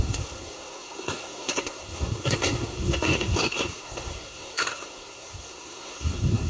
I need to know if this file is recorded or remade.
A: remade